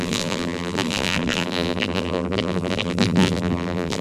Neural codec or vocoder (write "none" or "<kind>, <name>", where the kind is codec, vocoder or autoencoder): vocoder, BigVGAN v2